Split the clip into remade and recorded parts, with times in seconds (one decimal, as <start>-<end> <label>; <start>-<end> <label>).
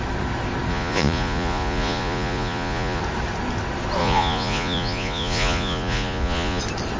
0.0-0.7 recorded; 0.7-3.0 remade; 3.0-4.0 recorded; 4.0-6.6 remade; 6.6-7.0 recorded